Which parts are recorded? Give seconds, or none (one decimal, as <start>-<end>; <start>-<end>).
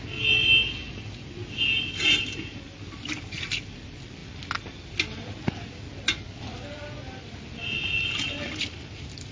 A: 0.0-9.3